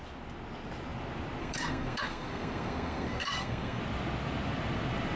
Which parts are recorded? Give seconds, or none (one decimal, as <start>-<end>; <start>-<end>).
0.0-1.4; 3.8-5.2